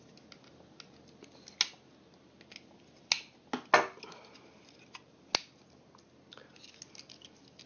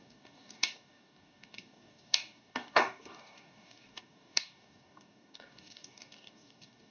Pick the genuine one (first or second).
first